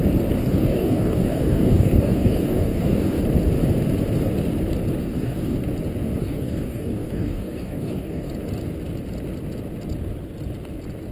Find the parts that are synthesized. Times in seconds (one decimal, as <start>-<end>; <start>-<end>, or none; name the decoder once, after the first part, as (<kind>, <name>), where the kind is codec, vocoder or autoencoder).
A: 0.4-3.2 (codec, DAC); 5.0-5.6; 6.2-8.3